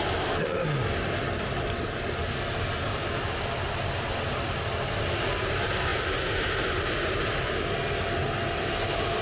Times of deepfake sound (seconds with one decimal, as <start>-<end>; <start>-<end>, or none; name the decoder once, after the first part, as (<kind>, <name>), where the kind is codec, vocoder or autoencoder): none